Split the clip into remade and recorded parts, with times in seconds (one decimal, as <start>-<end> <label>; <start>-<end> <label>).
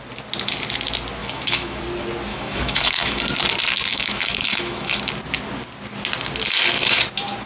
0.0-1.2 recorded; 1.2-1.8 remade; 1.8-2.3 recorded; 2.3-3.2 remade; 3.2-3.9 recorded; 3.9-5.0 remade; 5.0-7.5 recorded